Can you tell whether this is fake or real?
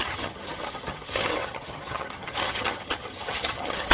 fake